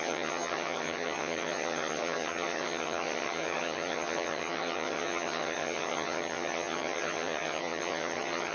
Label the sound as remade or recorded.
remade